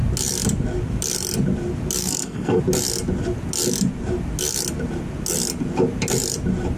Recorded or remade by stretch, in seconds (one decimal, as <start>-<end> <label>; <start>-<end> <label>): 0.0-2.0 recorded; 2.0-2.6 remade; 2.6-6.8 recorded